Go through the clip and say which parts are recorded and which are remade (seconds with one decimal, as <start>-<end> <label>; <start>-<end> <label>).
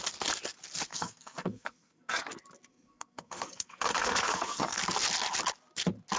0.0-0.9 recorded; 0.9-2.1 remade; 2.1-2.7 recorded; 2.7-4.8 remade; 4.8-6.2 recorded